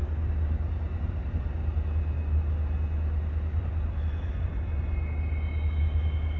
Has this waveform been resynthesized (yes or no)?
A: no